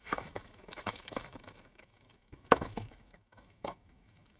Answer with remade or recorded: remade